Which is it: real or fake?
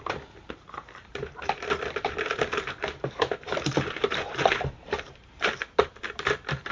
fake